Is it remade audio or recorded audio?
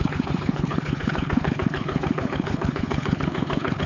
remade